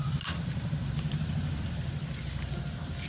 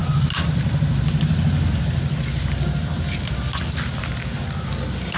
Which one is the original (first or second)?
second